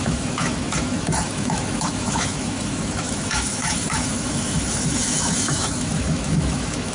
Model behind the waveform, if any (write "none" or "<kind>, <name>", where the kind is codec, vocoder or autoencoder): autoencoder, DAC-VAE